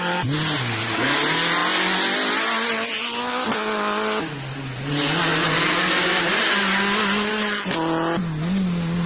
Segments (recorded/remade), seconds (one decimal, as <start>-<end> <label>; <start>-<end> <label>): 0.0-9.1 recorded